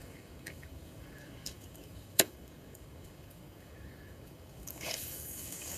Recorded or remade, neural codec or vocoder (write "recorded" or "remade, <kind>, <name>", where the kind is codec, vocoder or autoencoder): remade, codec, DAC